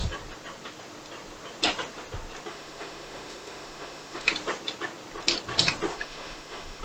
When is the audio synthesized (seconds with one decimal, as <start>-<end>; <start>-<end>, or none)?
2.5-4.3; 5.9-6.8